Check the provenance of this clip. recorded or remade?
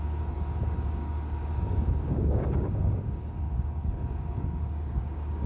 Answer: remade